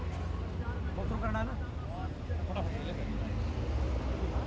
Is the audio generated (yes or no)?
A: no